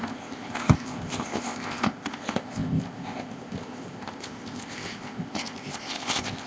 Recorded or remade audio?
remade